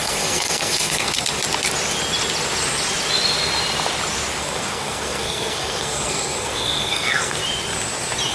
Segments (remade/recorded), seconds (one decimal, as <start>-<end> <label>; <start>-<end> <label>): 0.0-1.3 remade; 1.3-4.4 recorded; 4.4-7.4 remade; 7.4-8.3 recorded